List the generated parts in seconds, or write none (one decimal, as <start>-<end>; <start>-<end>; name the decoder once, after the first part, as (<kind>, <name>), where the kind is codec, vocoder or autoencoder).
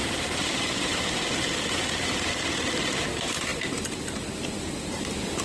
0.0-5.4 (vocoder, BigVGAN v2)